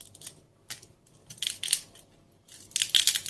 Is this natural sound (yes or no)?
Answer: yes